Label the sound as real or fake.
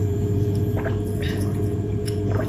fake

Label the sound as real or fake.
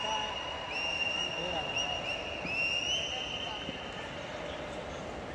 real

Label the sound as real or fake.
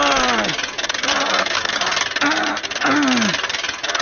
real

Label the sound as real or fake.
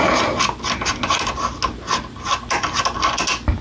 real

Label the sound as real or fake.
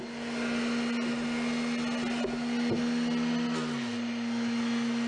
real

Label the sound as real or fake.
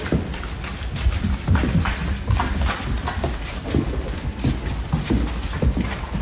real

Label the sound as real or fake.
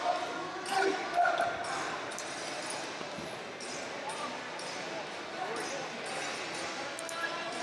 real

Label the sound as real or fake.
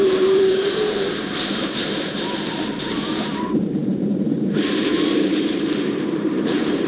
fake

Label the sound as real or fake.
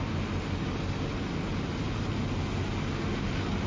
real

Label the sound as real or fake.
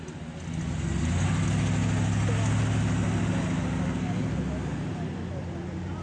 real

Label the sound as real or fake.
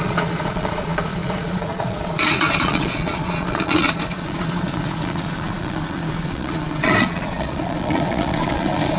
fake